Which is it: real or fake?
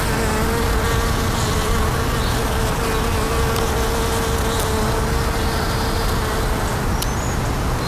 real